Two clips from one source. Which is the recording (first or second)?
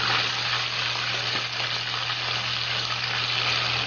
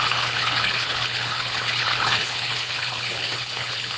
first